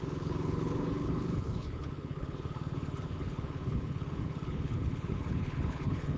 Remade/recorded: remade